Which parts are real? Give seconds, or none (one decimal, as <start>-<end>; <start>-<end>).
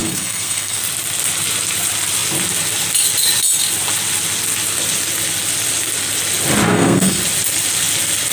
0.8-6.7; 7.2-8.3